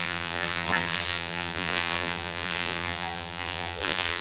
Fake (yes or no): yes